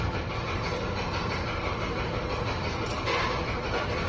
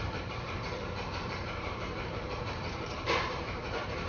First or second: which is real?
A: first